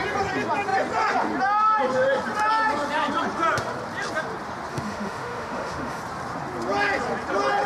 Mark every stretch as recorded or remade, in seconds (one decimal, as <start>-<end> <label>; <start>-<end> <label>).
0.0-4.7 recorded; 4.7-6.0 remade; 6.0-7.7 recorded